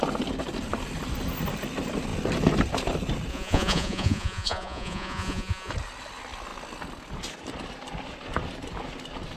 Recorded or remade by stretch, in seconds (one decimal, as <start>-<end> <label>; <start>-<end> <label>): 0.0-3.3 recorded; 3.3-5.7 remade; 5.7-9.4 recorded